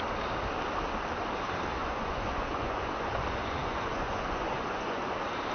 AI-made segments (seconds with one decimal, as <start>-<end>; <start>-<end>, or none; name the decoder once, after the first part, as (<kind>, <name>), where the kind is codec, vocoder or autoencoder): 1.8-5.1 (vocoder, Vocos)